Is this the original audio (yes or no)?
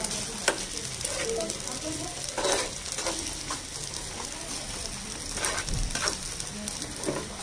yes